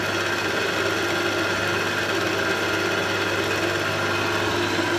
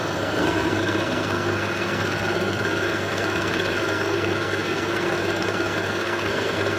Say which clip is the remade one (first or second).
second